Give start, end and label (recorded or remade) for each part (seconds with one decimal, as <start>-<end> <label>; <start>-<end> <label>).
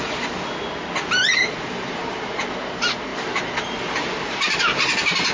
0.0-1.3 recorded; 1.3-5.3 remade